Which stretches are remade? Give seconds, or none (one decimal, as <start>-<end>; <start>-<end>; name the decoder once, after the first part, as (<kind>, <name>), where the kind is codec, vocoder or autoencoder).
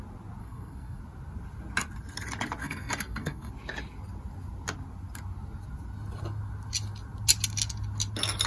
0.4-1.0 (codec, SNAC); 2.6-3.5